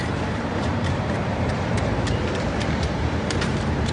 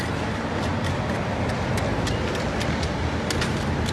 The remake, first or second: first